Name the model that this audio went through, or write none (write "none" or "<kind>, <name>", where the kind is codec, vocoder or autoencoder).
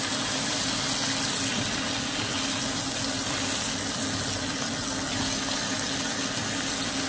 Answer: none